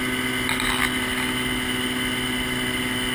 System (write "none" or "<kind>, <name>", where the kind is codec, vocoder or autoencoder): none